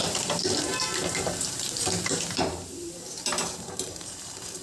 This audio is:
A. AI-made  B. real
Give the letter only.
A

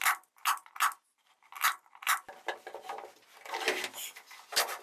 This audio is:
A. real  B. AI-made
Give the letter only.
A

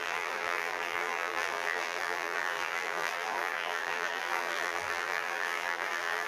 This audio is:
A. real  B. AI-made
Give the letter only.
B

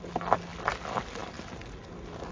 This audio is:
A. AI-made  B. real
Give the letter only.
B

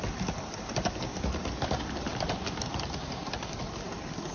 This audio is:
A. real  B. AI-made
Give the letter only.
A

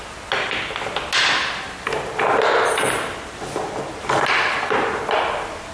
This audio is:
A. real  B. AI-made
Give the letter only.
A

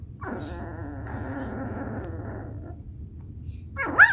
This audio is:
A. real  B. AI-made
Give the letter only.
A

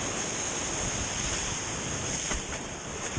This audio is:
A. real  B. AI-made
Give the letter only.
A